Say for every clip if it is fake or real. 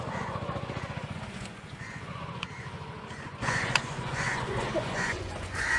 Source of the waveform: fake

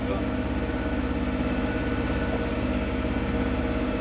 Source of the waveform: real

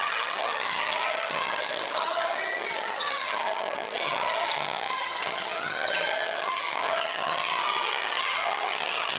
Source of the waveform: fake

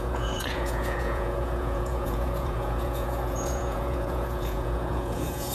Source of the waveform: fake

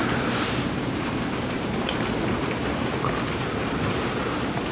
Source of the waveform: fake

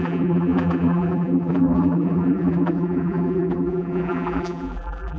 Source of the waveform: fake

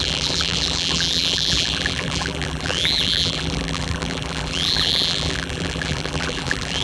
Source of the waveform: fake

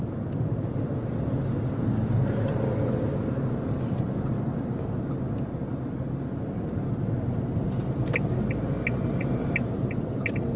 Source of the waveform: real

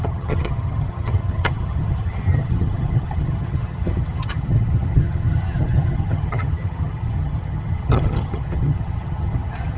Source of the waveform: fake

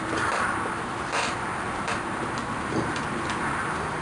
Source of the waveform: fake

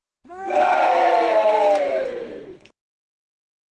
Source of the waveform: fake